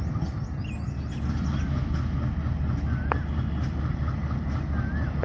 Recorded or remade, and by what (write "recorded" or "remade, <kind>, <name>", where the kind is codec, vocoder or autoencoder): recorded